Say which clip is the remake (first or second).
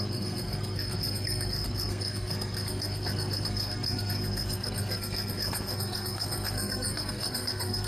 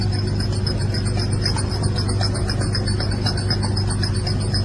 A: first